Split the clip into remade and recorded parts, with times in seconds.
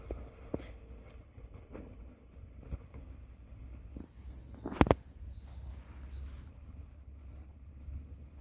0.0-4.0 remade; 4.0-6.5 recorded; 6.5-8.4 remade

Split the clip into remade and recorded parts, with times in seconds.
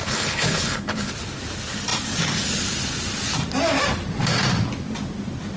0.0-1.1 remade; 1.1-5.6 recorded